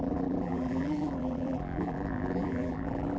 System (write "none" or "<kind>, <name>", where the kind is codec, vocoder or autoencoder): vocoder, BigVGAN v2